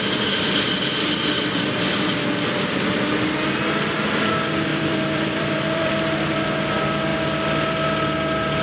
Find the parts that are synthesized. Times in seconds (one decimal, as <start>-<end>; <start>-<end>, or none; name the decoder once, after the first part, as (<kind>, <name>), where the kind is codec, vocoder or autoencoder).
4.7-5.9 (vocoder, BigVGAN v2)